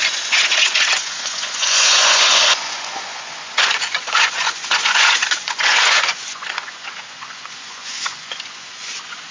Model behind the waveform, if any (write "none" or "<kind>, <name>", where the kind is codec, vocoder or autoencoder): vocoder, Vocos